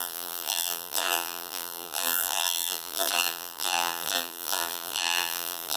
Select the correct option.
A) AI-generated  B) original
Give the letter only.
A